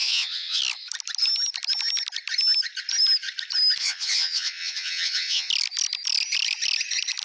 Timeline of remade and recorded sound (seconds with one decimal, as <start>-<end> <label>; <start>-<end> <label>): 0.0-0.6 remade; 0.6-3.8 recorded; 3.8-5.5 remade; 5.5-7.2 recorded